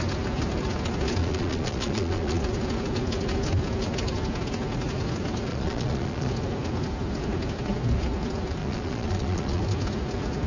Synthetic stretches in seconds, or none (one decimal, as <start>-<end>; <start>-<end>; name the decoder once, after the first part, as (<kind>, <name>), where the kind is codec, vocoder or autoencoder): 1.2-2.4 (vocoder, Vocos); 5.5-6.3; 8.6-9.6